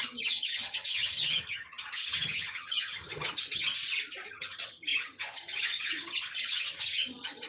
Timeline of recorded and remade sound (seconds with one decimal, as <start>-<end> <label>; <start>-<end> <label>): 0.0-3.7 remade; 3.7-4.3 recorded; 4.3-7.5 remade